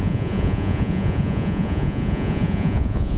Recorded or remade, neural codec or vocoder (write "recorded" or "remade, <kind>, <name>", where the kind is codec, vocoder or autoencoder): remade, vocoder, Vocos